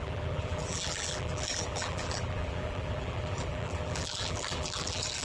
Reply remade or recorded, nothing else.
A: remade